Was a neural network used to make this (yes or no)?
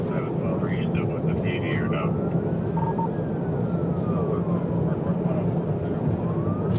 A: no